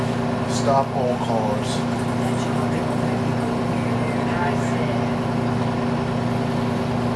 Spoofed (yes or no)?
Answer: no